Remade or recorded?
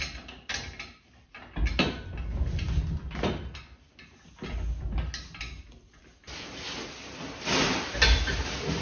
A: recorded